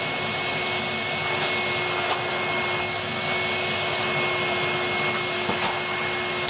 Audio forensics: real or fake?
real